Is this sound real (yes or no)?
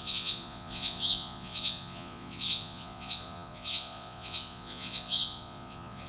no